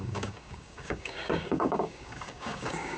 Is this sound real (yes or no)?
no